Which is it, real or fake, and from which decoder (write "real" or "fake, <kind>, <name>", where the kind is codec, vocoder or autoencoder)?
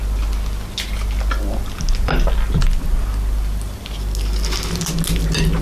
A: real